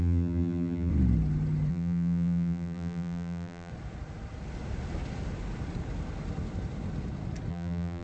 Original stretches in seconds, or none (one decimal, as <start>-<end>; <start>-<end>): 0.9-1.7; 3.7-7.5

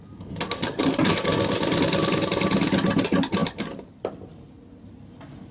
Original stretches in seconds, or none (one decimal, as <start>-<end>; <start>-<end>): 0.0-5.5

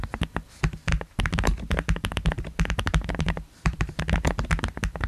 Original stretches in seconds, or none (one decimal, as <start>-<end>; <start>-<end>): 0.0-0.9; 4.0-5.1

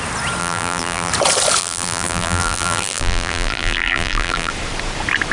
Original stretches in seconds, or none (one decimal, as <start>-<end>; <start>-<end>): 0.0-0.4; 1.1-1.6; 4.5-5.3

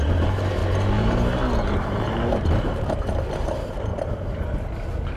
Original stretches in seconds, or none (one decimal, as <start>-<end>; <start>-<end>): 0.6-1.7; 3.9-5.2

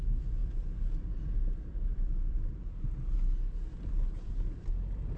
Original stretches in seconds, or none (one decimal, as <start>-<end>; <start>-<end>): 0.0-1.9; 2.6-5.2

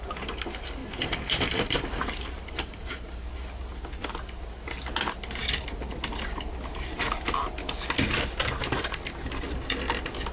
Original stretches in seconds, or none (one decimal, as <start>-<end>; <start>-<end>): 0.0-0.8; 3.2-10.3

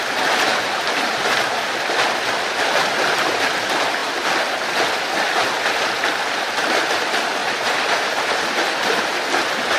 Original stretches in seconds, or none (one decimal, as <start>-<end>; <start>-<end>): 0.0-0.5; 1.7-7.4; 9.1-9.8